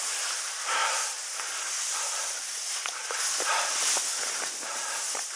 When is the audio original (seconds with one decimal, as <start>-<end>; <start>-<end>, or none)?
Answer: 0.0-5.4